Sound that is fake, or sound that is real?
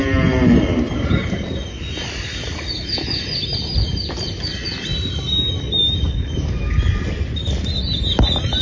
real